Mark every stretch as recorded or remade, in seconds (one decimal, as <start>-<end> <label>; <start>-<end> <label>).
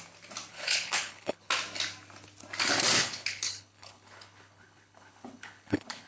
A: 0.0-0.5 recorded; 0.5-1.5 remade; 1.5-3.0 recorded; 3.0-6.1 remade